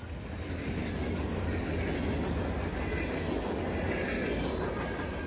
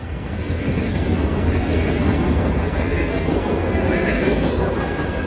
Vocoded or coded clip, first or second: second